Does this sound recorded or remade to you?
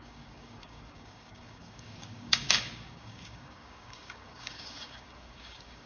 remade